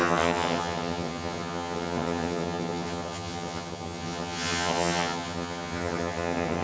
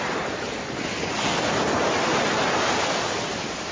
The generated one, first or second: first